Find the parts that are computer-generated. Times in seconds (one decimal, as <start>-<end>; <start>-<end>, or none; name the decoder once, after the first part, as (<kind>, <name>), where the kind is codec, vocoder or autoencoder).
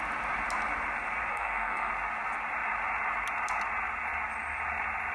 1.3-1.9 (codec, SNAC)